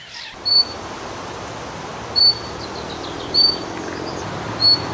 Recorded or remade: recorded